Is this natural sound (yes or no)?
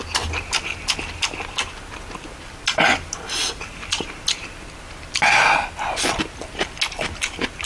yes